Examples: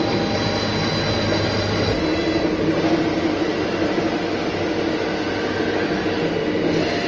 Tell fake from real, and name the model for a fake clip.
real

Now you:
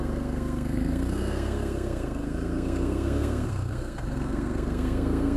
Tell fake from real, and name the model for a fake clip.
fake, codec, SNAC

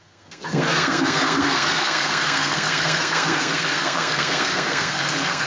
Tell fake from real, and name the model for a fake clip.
fake, codec, SNAC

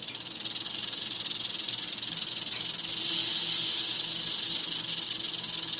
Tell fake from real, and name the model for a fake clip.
real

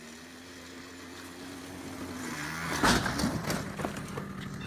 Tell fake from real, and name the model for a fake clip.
real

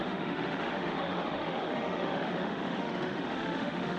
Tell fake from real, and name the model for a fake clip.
fake, autoencoder, DAC-VAE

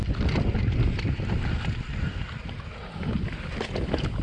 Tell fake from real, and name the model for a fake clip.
real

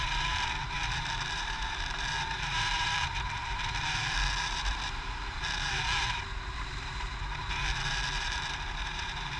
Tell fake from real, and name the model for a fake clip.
fake, vocoder, BigVGAN v2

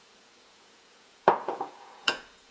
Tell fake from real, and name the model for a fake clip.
fake, vocoder, Vocos